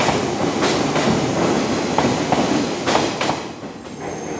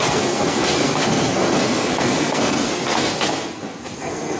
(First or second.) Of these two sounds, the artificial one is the second